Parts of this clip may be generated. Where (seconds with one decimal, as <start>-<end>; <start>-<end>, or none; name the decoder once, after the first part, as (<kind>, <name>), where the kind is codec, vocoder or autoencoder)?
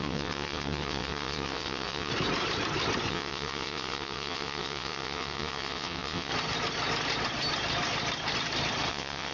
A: 0.0-2.1 (vocoder, WaveNeXt); 3.1-6.3; 8.9-9.3